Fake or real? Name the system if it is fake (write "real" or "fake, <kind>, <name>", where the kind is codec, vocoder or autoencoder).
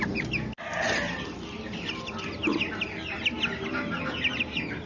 real